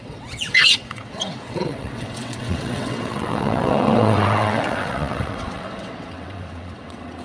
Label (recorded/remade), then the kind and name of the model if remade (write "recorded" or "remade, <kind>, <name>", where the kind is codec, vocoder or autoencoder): remade, vocoder, WaveNeXt